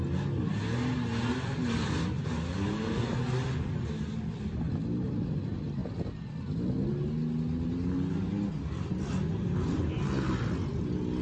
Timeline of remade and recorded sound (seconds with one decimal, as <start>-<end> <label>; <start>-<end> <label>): 0.0-11.2 recorded